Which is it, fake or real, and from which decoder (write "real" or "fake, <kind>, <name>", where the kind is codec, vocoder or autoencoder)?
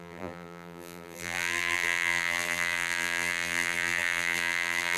fake, vocoder, BigVGAN v2